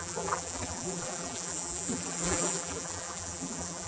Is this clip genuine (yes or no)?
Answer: no